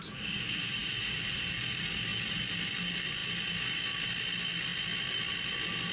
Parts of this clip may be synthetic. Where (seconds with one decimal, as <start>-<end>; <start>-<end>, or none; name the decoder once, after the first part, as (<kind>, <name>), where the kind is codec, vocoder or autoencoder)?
none